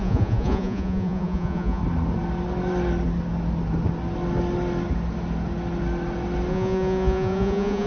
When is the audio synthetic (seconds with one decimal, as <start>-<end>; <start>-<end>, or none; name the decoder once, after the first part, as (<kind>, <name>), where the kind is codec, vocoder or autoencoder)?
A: 0.0-1.8 (vocoder, Vocos); 6.5-7.9